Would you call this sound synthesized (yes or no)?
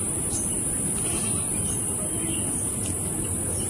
no